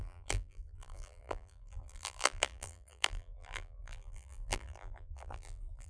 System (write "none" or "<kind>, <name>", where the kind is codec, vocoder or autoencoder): vocoder, BigVGAN v2